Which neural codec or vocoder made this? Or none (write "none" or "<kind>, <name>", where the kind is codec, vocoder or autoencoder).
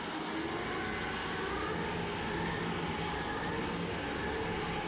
none